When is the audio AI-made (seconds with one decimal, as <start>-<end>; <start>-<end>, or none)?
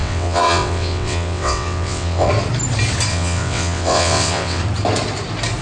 0.0-2.3; 3.1-4.6